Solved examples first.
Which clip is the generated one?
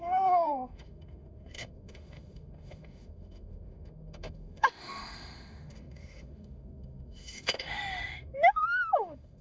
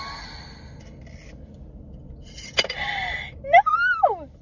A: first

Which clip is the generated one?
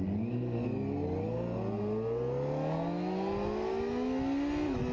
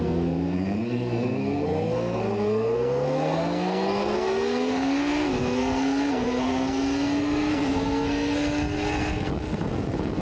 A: second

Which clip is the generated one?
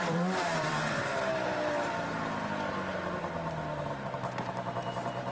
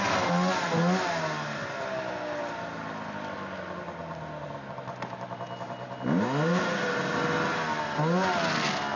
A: first